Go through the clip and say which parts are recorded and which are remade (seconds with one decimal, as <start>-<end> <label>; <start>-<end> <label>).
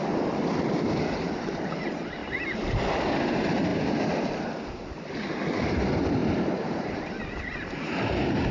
0.0-6.2 recorded; 6.2-7.2 remade; 7.2-8.5 recorded